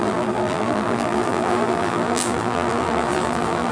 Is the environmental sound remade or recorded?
remade